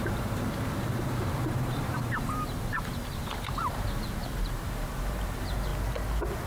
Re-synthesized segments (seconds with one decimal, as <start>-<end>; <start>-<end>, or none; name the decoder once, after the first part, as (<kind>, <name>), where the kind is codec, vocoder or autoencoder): 0.0-5.7 (vocoder, BigVGAN v2)